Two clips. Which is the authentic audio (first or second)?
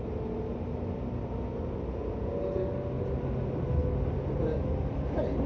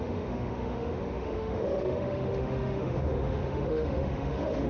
first